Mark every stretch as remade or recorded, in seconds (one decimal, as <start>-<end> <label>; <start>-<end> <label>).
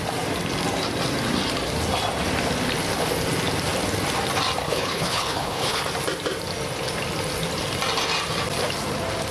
0.0-4.6 recorded; 4.6-5.8 remade; 5.8-9.3 recorded